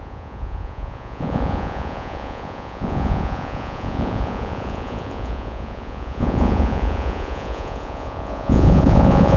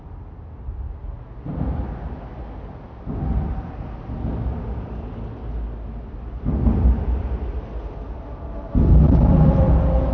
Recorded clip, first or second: second